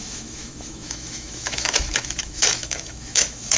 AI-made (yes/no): yes